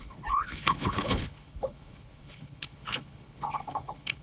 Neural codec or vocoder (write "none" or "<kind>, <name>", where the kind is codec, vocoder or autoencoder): codec, HILCodec